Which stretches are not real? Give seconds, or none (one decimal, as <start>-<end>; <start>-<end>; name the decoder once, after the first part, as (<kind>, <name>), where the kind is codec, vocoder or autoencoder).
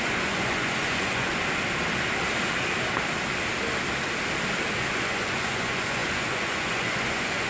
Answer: 0.0-1.3 (vocoder, Vocos); 4.9-7.5